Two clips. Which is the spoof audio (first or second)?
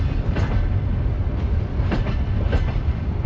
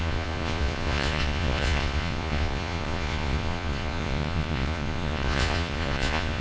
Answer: second